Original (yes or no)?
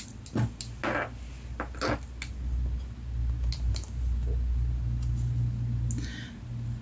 yes